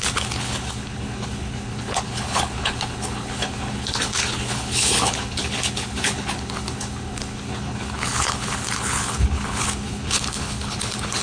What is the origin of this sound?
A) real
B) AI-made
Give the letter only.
B